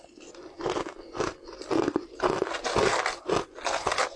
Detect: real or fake real